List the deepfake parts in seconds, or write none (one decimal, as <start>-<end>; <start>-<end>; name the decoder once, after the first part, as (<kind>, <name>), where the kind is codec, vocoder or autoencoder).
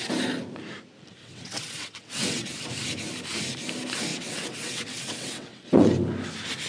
1.2-2.5 (vocoder, WaveNeXt); 4.1-5.9